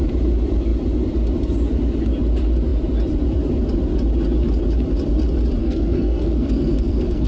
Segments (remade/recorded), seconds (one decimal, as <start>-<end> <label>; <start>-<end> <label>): 0.0-5.6 recorded; 5.6-7.3 remade